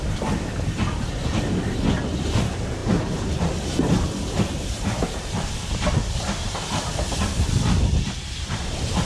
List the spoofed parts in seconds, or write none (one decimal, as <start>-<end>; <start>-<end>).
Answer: none

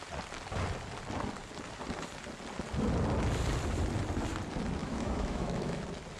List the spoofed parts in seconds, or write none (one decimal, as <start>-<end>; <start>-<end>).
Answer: 4.8-5.8

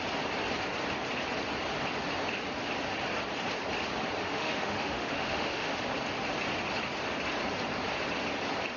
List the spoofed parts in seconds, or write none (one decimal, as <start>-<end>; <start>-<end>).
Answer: 4.2-5.8